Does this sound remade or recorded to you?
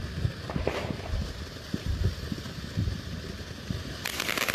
recorded